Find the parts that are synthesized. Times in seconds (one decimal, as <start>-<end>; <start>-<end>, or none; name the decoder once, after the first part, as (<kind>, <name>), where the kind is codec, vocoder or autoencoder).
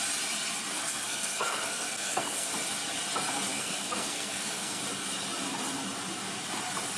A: 0.7-2.5 (codec, SNAC); 3.5-4.8